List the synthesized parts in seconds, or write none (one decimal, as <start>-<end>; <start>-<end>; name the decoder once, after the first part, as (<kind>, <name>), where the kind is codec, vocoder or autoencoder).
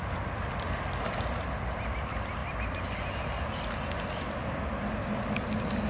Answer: none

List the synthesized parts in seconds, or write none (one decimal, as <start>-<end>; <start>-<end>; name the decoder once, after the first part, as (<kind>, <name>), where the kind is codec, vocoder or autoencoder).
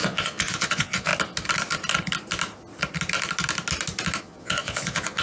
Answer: 0.0-1.1 (vocoder, Vocos); 4.2-5.2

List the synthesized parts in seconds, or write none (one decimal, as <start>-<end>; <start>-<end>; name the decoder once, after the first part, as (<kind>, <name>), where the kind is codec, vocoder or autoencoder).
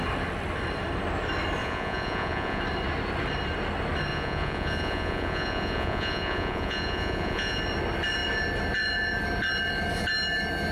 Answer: 1.6-2.6 (vocoder, Vocos); 4.1-7.6